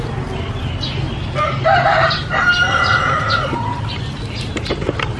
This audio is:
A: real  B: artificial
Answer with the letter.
A